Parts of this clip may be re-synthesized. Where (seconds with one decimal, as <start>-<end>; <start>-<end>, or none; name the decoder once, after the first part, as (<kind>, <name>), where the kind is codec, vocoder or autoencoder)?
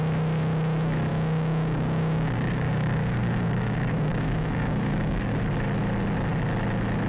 1.1-5.4 (codec, DAC)